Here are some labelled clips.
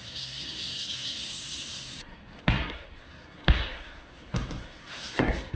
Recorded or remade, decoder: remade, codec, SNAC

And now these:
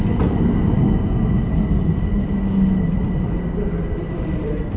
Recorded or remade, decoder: recorded